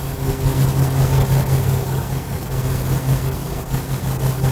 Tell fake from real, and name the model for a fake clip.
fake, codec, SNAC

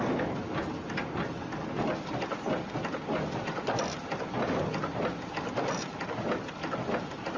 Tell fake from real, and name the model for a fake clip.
real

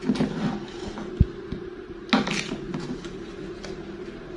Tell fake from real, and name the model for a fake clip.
real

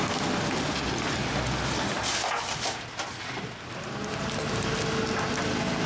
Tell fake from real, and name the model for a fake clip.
real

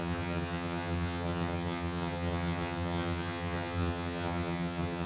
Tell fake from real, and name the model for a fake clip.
fake, vocoder, HiFi-GAN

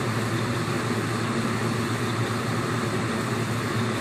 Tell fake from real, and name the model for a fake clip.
real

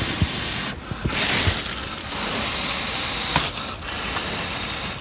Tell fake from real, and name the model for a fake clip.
real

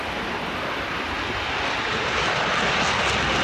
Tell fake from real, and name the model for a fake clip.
real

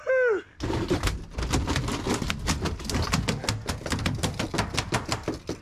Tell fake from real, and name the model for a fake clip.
real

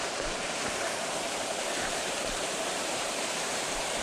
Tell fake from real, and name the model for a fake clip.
fake, vocoder, BigVGAN v2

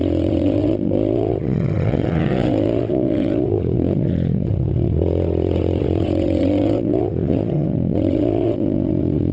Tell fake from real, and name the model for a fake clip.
fake, vocoder, WaveNeXt